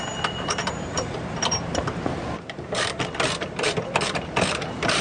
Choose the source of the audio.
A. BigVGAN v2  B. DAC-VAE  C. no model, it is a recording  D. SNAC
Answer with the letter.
A